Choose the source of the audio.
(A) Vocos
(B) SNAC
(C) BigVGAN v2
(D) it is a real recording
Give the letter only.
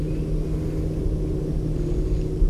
D